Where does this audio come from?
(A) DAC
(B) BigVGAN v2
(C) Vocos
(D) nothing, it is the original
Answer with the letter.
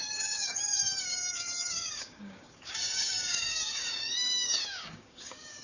A